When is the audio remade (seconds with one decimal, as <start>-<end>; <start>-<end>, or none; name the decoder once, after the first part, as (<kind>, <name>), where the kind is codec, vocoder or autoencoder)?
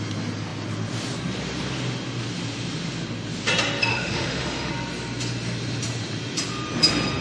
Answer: 3.9-4.7 (autoencoder, DAC-VAE)